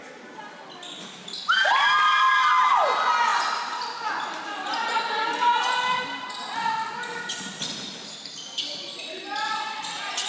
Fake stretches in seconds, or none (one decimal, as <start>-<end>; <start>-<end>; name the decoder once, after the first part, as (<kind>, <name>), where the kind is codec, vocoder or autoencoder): none